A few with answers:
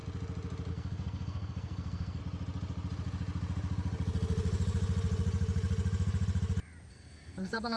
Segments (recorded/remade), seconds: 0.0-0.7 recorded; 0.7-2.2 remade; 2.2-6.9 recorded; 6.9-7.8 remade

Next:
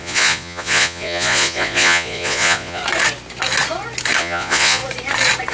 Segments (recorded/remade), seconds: 0.0-2.8 remade; 2.8-4.2 recorded; 4.2-4.8 remade; 4.8-5.5 recorded

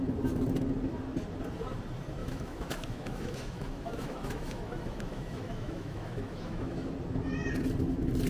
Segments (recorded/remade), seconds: 0.0-2.2 recorded; 2.2-6.9 remade; 6.9-8.3 recorded